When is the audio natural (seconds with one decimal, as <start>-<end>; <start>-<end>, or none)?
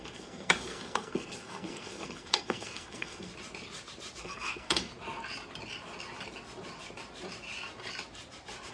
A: 3.3-4.2; 4.9-8.7